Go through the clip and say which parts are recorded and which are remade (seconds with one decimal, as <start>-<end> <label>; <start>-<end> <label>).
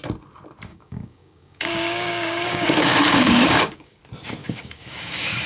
0.0-0.7 recorded; 0.7-4.0 remade; 4.0-4.4 recorded; 4.4-5.5 remade